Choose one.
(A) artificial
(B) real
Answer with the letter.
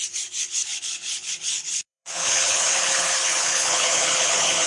A